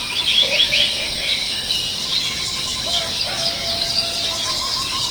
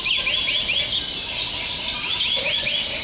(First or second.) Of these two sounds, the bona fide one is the second